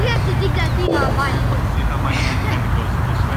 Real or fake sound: real